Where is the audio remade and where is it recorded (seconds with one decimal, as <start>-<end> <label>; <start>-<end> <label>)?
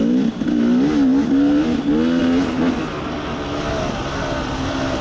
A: 0.0-5.0 recorded